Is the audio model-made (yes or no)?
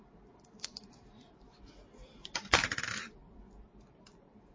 yes